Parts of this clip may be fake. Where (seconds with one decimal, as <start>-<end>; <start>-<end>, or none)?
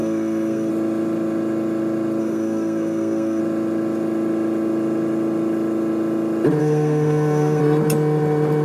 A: 0.0-0.7; 2.2-3.4; 6.6-7.6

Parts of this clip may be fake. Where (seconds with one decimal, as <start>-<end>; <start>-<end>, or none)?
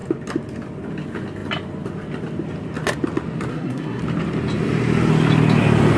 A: 3.5-4.0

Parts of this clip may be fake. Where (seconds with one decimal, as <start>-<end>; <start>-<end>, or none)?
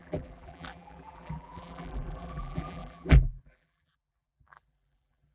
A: 0.0-5.3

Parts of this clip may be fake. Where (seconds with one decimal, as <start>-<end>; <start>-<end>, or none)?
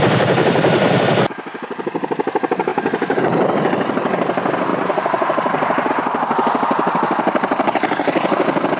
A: 4.7-5.9